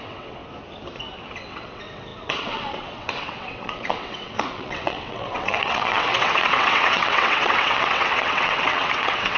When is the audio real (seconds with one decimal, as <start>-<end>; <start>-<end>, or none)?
0.4-1.4